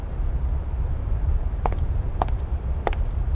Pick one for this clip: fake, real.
fake